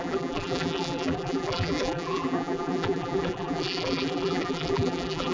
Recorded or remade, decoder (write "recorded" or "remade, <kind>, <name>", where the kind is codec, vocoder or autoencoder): remade, vocoder, BigVGAN v2